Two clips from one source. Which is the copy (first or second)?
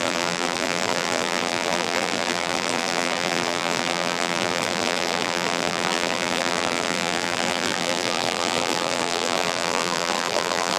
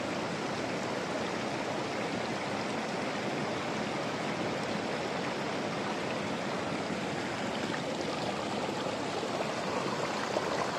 first